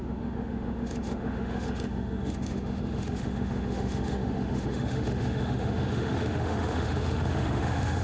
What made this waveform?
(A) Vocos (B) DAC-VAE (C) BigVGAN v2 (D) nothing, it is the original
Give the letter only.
B